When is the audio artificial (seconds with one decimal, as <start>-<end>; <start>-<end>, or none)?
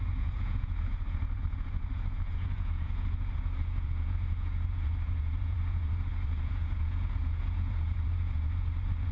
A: 0.0-9.1